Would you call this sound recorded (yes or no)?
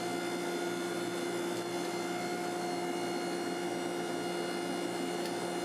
yes